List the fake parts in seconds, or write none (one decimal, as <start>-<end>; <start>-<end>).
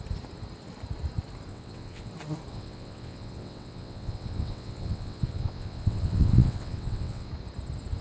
1.5-2.1; 2.5-7.3